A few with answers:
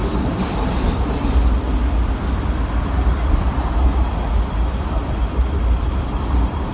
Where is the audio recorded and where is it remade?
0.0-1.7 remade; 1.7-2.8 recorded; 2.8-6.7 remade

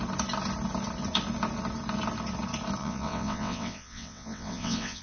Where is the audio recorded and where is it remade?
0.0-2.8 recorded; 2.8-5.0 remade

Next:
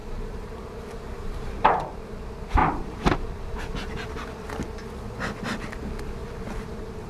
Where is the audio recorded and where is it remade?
0.0-2.2 remade; 2.2-2.6 recorded; 2.6-3.6 remade; 3.6-6.2 recorded; 6.2-7.1 remade

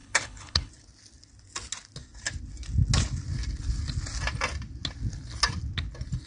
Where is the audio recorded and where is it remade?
0.0-0.7 remade; 0.7-6.3 recorded